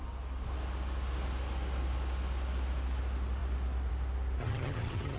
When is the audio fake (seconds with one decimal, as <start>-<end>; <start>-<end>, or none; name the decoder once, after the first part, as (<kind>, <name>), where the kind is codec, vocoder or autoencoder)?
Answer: 4.4-5.2 (vocoder, HiFi-GAN)